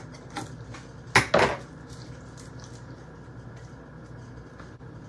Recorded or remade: recorded